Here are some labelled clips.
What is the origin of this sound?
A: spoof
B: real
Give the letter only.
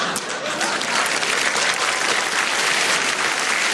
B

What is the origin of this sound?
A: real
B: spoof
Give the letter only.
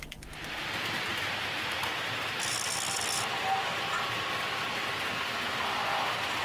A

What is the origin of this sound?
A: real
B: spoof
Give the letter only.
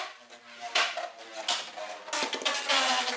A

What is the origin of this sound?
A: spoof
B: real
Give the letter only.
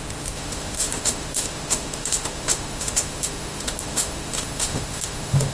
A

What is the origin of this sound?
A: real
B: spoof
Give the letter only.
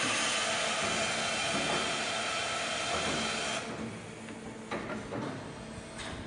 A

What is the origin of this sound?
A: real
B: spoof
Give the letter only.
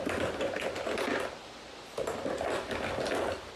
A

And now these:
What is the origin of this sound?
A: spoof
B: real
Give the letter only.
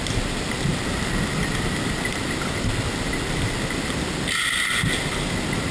B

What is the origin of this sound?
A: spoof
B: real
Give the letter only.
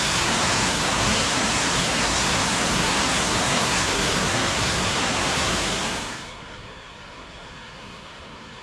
A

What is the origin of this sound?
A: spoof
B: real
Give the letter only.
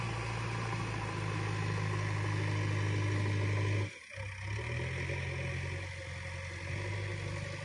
B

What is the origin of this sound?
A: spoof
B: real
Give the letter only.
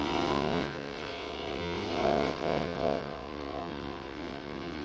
A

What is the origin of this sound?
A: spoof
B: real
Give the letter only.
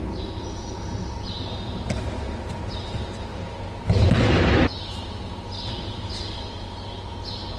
B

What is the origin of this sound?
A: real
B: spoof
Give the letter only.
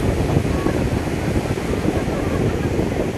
A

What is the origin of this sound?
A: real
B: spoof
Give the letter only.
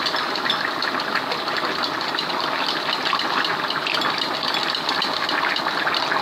A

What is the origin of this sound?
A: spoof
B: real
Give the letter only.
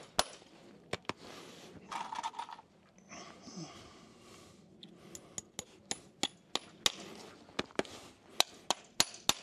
B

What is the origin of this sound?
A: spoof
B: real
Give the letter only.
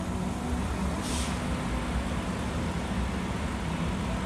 B